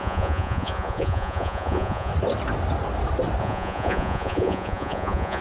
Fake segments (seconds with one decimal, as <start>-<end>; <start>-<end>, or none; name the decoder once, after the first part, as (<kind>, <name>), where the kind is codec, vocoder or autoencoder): 0.0-2.1 (vocoder, Vocos); 3.4-5.4